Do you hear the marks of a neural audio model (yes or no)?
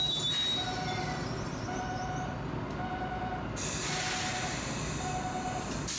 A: no